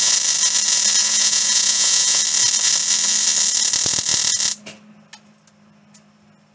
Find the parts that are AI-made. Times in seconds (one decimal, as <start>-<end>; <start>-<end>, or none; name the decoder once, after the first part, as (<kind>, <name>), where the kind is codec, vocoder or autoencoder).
1.0-2.2 (vocoder, Vocos)